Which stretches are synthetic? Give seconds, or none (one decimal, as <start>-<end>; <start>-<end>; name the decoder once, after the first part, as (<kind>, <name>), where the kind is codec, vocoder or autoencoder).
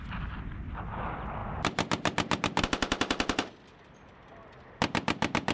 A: none